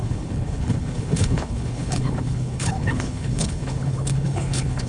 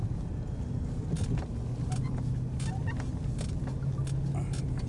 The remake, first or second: first